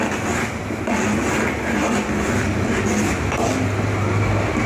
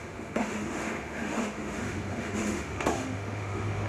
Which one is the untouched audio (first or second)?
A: first